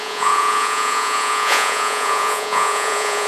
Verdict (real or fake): fake